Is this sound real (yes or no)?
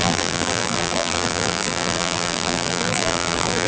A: no